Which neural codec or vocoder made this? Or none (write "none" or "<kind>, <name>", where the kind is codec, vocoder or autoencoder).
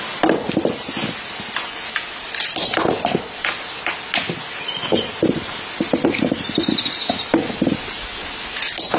none